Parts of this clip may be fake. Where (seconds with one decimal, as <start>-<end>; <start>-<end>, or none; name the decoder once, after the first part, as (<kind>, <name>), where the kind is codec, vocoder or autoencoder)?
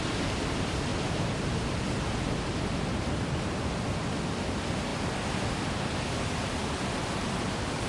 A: none